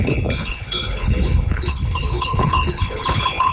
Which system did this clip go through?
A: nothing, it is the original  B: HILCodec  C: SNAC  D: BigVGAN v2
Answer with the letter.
B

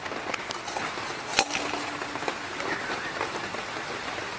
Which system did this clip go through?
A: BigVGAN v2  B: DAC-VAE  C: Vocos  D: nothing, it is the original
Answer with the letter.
D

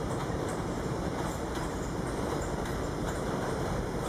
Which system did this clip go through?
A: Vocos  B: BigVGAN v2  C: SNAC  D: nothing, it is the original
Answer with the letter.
B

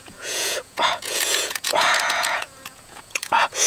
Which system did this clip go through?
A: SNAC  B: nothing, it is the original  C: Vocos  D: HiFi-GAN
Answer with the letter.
C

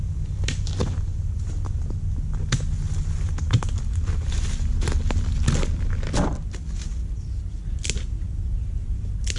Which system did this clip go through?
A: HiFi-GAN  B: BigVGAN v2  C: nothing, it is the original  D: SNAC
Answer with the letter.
C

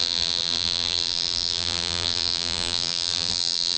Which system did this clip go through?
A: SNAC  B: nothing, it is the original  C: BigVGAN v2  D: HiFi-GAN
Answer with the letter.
C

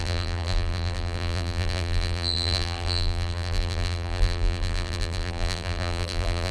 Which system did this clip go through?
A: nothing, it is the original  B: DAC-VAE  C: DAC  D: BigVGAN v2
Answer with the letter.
D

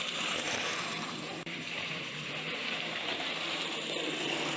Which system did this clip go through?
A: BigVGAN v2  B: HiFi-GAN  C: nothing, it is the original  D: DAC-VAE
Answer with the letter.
A